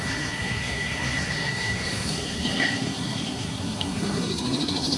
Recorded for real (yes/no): no